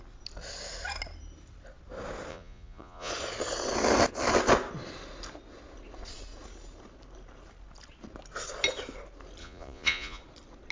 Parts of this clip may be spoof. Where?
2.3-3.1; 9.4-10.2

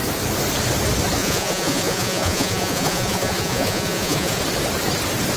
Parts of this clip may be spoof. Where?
1.2-4.4

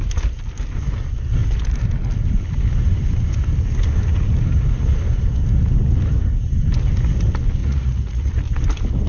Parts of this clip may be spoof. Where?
7.6-8.3

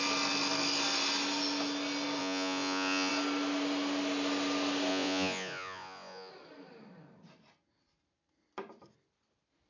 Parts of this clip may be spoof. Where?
2.2-3.1; 4.9-6.3

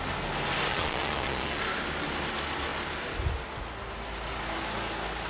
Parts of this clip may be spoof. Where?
0.7-1.6

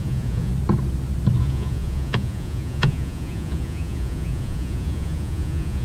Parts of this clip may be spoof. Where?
0.0-0.5; 1.4-5.8

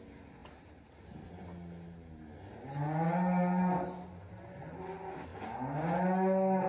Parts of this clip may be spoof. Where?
none